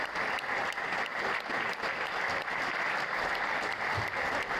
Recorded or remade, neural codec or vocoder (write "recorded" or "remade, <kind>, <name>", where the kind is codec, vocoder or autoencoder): recorded